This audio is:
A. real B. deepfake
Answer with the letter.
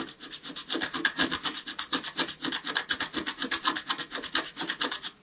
A